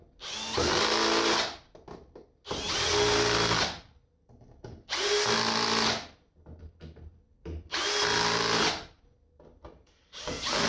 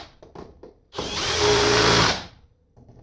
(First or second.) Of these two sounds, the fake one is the second